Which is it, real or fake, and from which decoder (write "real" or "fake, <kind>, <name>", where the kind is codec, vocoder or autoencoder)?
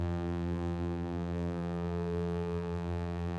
fake, vocoder, BigVGAN v2